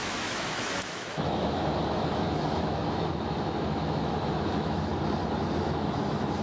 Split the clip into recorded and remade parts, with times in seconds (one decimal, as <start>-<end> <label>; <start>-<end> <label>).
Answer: 0.0-4.9 remade; 4.9-5.6 recorded; 5.6-6.4 remade